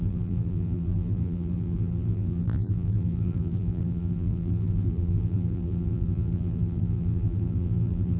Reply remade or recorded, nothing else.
remade